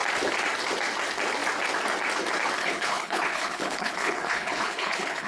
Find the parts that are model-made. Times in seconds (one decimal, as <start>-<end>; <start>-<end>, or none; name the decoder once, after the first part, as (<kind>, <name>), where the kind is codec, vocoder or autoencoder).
2.6-5.3 (codec, HILCodec)